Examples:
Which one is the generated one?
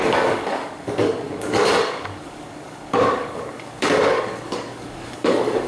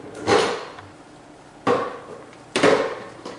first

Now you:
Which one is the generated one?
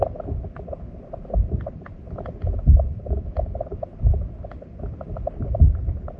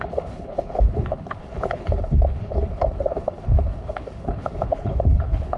second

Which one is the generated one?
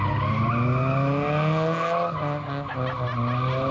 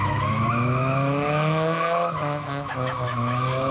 second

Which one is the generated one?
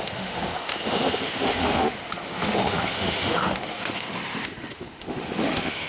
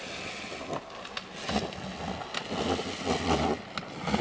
first